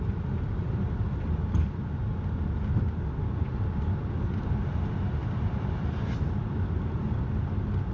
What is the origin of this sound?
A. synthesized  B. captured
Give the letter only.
B